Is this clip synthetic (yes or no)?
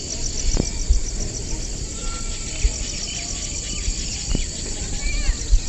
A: no